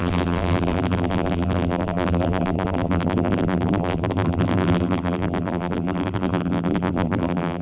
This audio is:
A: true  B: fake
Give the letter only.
B